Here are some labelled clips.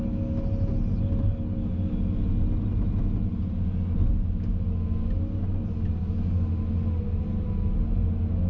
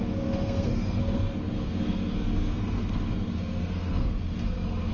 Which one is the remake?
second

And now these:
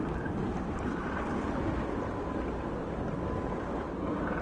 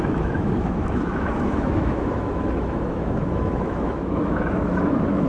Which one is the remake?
second